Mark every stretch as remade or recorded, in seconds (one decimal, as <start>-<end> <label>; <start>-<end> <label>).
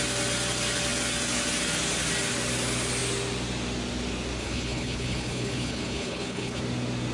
0.0-4.4 recorded; 4.4-6.6 remade; 6.6-7.1 recorded